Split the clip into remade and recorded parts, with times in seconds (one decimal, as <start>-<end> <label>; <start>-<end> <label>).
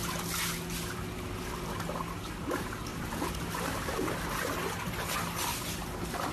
0.0-2.9 recorded; 2.9-4.1 remade; 4.1-6.3 recorded